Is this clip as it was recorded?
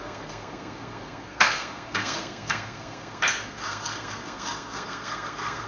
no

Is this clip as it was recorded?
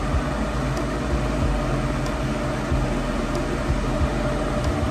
yes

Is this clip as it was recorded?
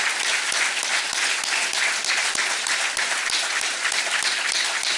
yes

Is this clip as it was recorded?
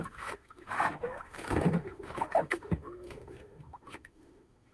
no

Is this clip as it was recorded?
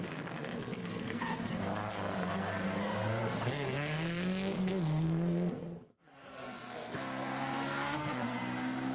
no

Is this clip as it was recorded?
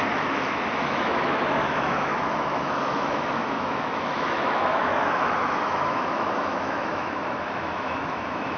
no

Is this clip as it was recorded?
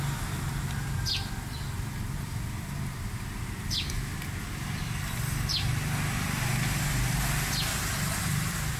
yes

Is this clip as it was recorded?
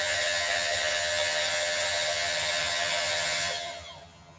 no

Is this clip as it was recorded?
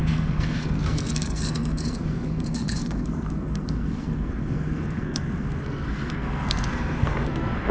no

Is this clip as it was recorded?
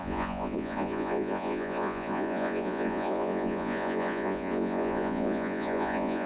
no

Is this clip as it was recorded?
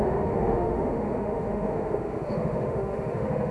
no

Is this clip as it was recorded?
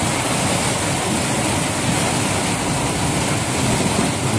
yes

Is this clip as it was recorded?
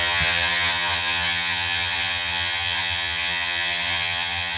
no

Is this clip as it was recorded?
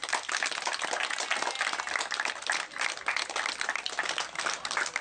yes